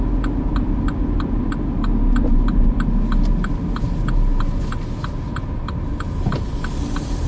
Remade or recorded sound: recorded